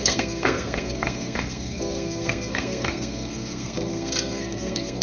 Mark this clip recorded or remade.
remade